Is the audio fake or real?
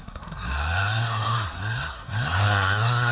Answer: fake